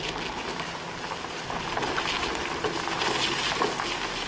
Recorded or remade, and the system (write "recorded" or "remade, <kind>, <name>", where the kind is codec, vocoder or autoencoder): recorded